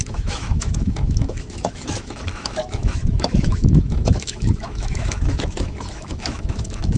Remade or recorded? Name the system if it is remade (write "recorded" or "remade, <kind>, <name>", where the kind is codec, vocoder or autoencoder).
remade, autoencoder, DAC-VAE